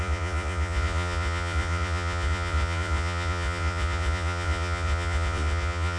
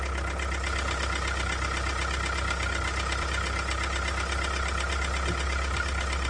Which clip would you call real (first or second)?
second